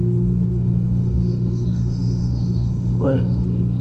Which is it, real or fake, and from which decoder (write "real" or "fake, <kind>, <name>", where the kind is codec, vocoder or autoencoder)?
fake, autoencoder, DAC-VAE